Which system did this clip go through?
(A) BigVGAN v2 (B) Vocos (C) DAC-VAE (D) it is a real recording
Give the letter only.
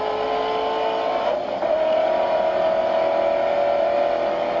D